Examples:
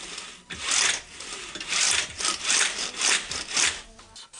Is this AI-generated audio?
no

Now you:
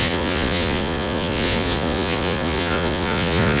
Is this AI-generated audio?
yes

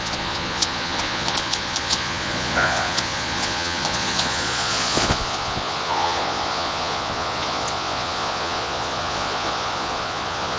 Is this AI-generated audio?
yes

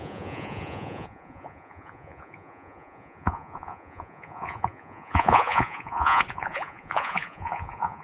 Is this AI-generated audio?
yes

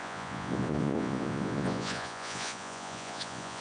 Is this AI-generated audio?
yes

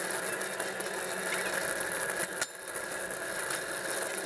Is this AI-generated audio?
no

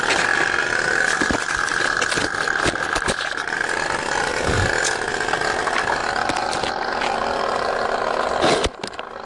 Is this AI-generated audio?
no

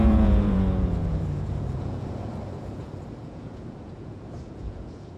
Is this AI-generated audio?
yes